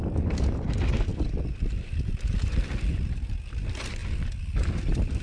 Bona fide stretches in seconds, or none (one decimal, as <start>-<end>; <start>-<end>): 0.0-1.1; 2.1-4.0